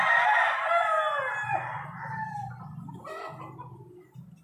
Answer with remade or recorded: recorded